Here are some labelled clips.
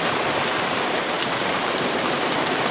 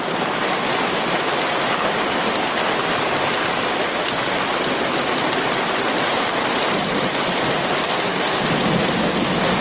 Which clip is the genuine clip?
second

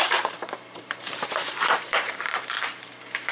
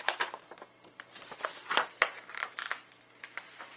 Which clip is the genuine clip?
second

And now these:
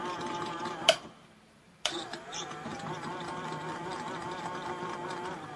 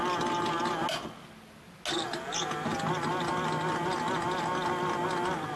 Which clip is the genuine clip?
second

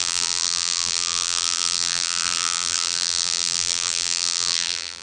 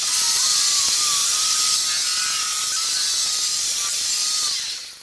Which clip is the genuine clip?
second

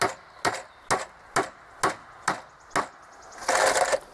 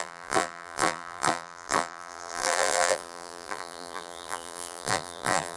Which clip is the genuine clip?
first